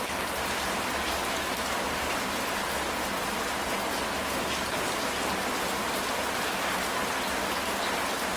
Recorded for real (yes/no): yes